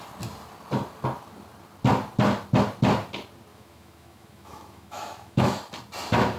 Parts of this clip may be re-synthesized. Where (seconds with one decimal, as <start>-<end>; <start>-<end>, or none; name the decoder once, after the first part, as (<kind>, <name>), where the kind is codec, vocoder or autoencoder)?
3.5-5.6 (autoencoder, DAC-VAE)